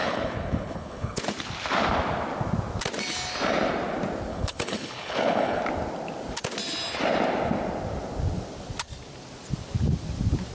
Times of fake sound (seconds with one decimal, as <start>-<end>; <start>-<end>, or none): 0.0-1.2; 4.3-5.6